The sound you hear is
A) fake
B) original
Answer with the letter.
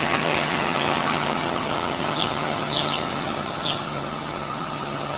A